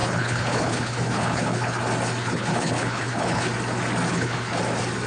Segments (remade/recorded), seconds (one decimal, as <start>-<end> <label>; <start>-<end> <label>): 0.0-1.8 remade; 1.8-2.2 recorded; 2.2-3.5 remade; 3.5-4.1 recorded; 4.1-4.6 remade; 4.6-5.1 recorded